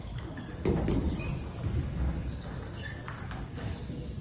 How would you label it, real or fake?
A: fake